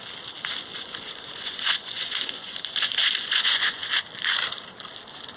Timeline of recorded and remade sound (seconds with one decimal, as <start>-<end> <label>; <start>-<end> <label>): 0.0-0.7 recorded; 0.7-3.9 remade; 3.9-5.4 recorded